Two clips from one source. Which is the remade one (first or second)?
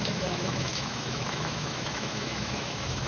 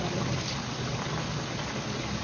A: first